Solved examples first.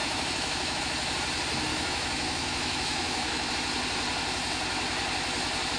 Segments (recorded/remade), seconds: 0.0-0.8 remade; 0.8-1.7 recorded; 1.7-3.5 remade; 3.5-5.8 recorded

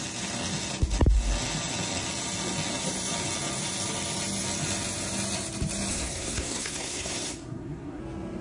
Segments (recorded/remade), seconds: 0.0-5.9 recorded; 5.9-8.0 remade; 8.0-8.4 recorded